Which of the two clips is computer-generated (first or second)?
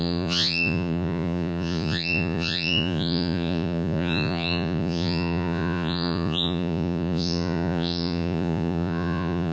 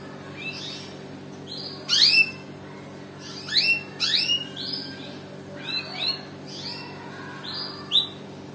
first